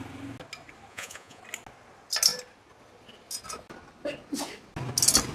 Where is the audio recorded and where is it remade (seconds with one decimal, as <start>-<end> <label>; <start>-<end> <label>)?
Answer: 0.0-0.9 recorded; 0.9-1.4 remade; 1.4-5.3 recorded